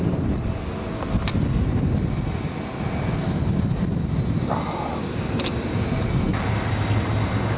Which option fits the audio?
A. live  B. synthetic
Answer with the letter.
A